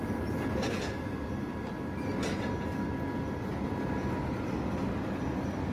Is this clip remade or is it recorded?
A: recorded